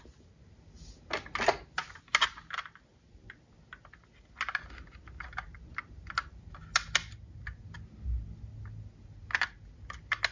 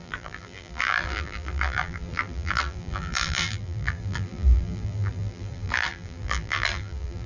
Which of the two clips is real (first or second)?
first